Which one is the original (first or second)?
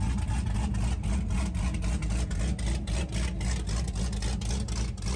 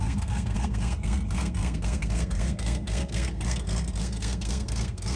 first